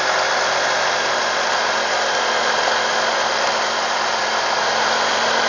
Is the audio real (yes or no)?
yes